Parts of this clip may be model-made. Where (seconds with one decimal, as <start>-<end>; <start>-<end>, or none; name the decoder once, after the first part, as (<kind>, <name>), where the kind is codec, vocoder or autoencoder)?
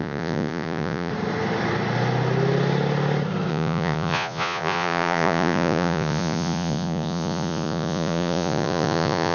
0.0-1.1 (vocoder, Vocos); 3.5-9.3